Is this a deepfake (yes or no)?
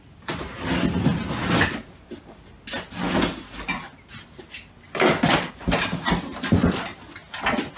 no